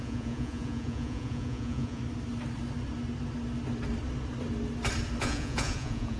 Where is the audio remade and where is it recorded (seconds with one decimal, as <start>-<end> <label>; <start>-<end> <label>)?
0.0-2.0 remade; 2.0-5.2 recorded; 5.2-6.2 remade